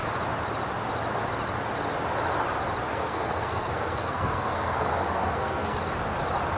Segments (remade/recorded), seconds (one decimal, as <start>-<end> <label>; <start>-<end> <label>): 0.0-2.9 recorded; 2.9-5.8 remade; 5.8-6.6 recorded